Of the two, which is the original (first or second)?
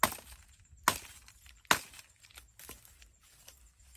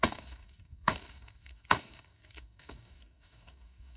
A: first